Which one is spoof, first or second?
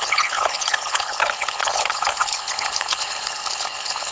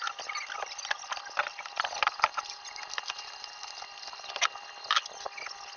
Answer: first